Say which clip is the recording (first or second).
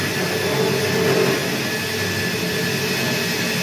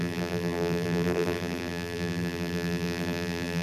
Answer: first